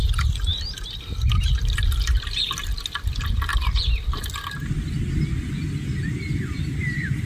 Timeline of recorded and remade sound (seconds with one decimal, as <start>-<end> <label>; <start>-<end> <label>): 0.0-7.3 recorded